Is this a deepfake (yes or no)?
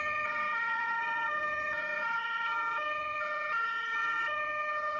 yes